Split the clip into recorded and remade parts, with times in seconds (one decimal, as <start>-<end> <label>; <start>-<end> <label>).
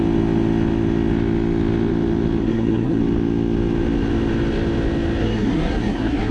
0.0-2.4 recorded; 2.4-3.0 remade; 3.0-5.2 recorded; 5.2-6.3 remade